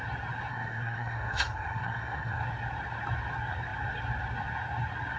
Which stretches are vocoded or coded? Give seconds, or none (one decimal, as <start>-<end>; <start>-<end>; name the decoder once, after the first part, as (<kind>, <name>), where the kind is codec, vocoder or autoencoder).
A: 0.5-2.4 (codec, SNAC)